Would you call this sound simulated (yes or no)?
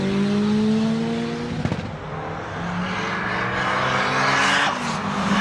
no